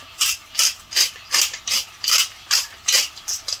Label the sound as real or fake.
real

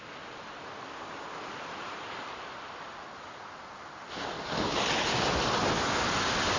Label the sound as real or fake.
real